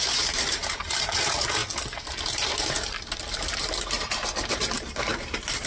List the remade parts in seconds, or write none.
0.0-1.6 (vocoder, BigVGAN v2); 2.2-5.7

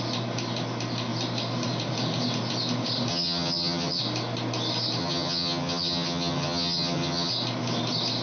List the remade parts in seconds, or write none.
3.1-4.0 (vocoder, HiFi-GAN); 5.0-7.3

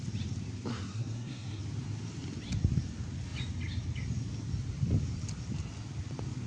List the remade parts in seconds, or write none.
0.7-1.6 (codec, SNAC)

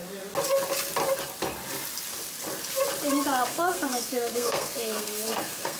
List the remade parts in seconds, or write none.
3.5-5.8 (codec, SNAC)